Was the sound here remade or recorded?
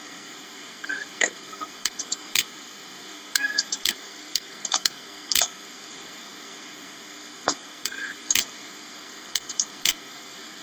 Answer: remade